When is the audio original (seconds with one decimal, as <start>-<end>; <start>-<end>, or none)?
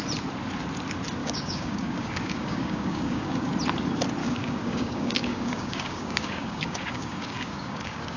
0.0-1.2; 3.5-4.2